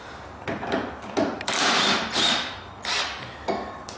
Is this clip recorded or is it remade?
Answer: remade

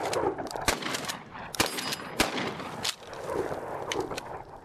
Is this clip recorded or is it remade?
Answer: recorded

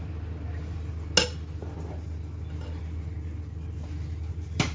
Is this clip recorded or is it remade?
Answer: recorded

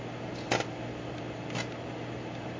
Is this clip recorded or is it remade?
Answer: recorded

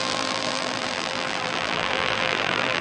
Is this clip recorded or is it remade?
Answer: remade